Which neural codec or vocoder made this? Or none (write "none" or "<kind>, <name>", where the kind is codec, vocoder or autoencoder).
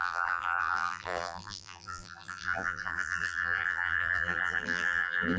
vocoder, BigVGAN v2